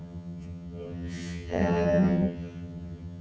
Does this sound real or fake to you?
fake